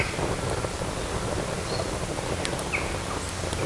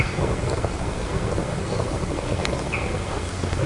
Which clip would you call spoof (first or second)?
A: second